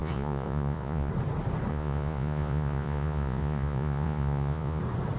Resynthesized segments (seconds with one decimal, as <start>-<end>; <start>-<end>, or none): 0.0-1.1; 1.7-4.8